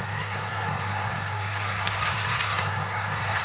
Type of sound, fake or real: fake